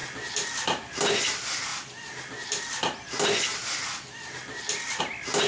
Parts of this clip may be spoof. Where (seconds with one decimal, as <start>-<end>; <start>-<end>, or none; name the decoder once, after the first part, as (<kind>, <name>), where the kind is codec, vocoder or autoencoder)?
none